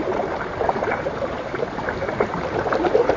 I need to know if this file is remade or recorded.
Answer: recorded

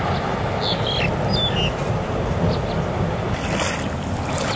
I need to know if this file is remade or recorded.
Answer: recorded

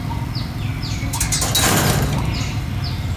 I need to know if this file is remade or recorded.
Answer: recorded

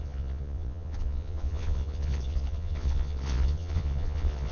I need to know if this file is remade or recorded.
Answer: remade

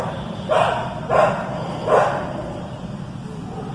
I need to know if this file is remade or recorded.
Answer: recorded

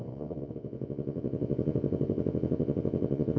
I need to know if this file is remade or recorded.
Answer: remade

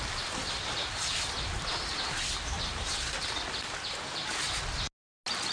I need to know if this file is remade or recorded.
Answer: recorded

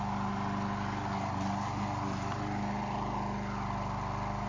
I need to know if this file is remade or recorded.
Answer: recorded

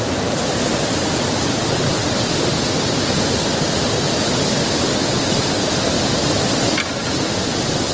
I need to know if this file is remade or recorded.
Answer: recorded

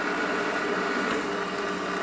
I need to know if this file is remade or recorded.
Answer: recorded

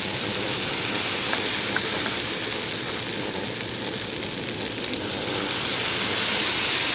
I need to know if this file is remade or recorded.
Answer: recorded